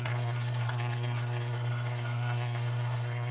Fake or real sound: fake